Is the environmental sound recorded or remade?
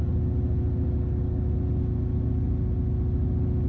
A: recorded